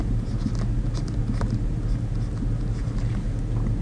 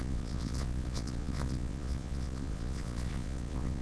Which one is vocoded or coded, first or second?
second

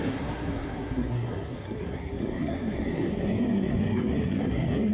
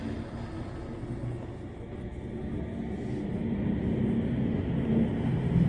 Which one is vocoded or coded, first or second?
first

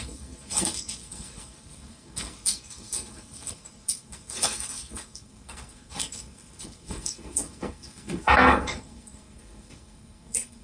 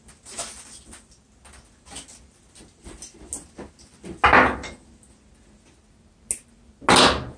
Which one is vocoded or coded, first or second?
first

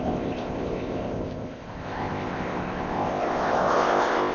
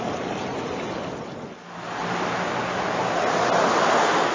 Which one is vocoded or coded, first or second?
first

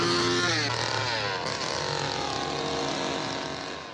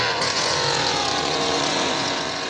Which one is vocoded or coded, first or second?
second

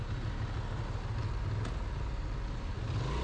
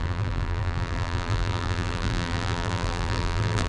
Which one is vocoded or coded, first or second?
second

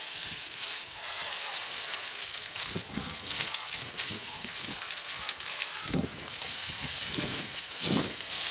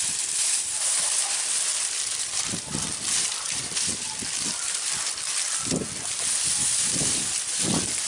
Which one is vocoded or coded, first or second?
first